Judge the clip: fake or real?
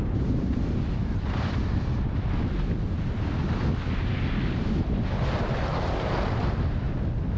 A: real